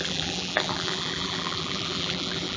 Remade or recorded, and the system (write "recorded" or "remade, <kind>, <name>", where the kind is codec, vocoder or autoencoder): remade, vocoder, BigVGAN v2